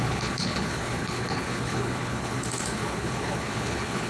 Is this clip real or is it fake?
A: fake